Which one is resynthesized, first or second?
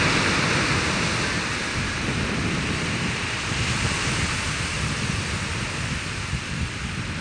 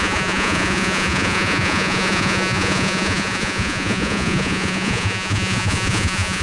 second